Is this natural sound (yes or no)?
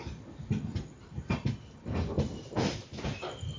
yes